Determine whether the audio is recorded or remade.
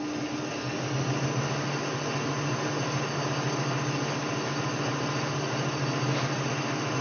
recorded